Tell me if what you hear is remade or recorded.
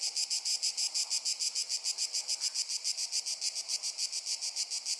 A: recorded